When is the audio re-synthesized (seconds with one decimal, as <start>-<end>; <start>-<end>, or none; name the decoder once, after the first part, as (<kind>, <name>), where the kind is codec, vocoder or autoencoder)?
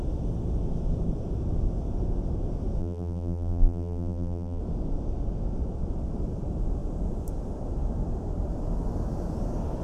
2.8-4.6 (vocoder, BigVGAN v2)